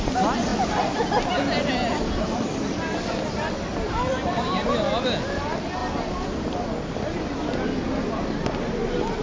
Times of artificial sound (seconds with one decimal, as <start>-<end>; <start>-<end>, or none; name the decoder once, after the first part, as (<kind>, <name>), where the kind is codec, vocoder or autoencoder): none